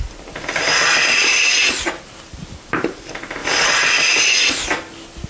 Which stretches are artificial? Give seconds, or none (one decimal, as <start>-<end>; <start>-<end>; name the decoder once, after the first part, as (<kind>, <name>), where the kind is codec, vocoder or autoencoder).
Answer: 0.0-5.3 (vocoder, BigVGAN v2)